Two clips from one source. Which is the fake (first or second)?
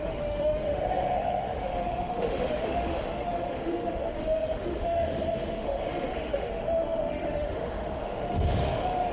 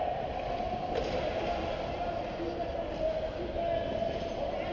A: first